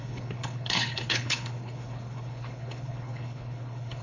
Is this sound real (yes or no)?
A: no